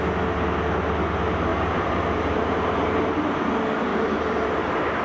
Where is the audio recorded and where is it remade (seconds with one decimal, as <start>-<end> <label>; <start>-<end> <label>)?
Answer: 0.0-1.5 recorded; 1.5-3.1 remade; 3.1-3.9 recorded; 3.9-5.0 remade